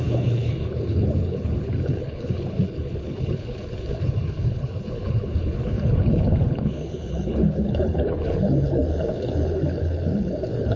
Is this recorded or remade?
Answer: remade